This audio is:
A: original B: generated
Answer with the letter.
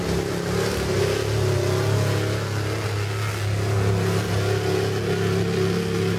A